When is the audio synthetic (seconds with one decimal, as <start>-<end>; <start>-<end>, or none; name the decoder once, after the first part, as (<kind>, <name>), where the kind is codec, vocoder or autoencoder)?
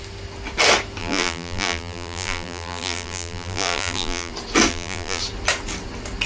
1.0-4.3 (vocoder, BigVGAN v2); 4.7-5.2